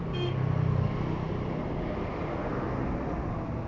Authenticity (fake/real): real